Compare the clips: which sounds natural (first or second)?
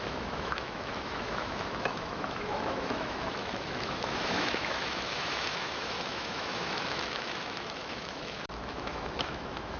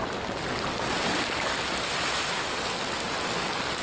second